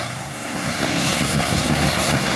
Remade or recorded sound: remade